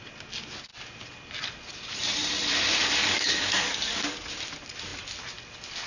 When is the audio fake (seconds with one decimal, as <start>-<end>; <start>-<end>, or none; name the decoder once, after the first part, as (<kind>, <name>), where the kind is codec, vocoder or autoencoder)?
3.0-4.3 (codec, DAC)